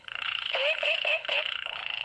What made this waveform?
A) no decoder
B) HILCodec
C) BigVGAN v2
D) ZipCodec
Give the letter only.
B